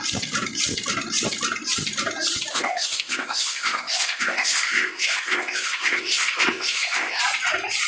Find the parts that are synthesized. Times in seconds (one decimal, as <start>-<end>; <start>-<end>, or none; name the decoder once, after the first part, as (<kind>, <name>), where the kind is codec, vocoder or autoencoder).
2.5-7.2 (codec, ZipCodec)